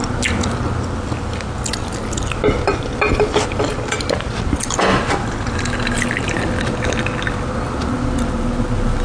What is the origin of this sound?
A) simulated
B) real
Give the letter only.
B